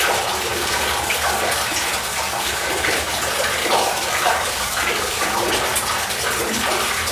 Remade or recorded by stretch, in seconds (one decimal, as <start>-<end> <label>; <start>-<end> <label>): 0.0-0.5 recorded; 0.5-1.7 remade; 1.7-2.1 recorded; 2.1-3.1 remade; 3.1-3.6 recorded; 3.6-5.5 remade; 5.5-7.1 recorded